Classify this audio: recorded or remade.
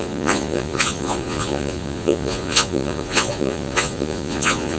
remade